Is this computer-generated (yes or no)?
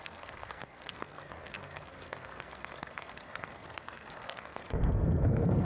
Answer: yes